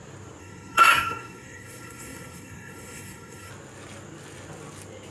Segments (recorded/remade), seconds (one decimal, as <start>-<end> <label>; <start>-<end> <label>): 0.0-0.4 recorded; 0.4-3.5 remade; 3.5-5.1 recorded

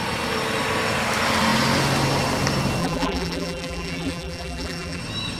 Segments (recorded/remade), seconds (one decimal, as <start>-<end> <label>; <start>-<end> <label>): 0.0-2.8 recorded; 2.8-5.0 remade; 5.0-5.4 recorded

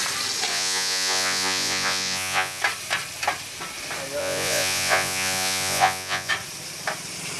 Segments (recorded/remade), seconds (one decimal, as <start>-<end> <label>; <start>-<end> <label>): 0.0-0.5 recorded; 0.5-2.6 remade; 2.6-4.2 recorded; 4.2-6.3 remade; 6.3-7.4 recorded

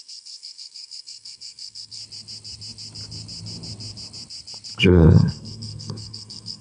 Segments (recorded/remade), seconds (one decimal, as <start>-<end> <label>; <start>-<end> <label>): 0.0-2.0 remade; 2.0-4.8 recorded; 4.8-6.6 remade

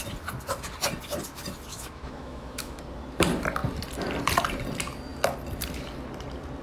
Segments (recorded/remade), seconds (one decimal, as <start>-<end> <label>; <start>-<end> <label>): 0.0-1.7 recorded; 1.7-2.8 remade; 2.8-6.6 recorded